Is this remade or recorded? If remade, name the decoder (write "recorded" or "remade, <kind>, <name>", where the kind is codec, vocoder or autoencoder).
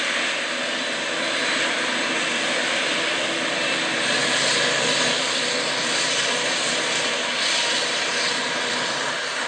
recorded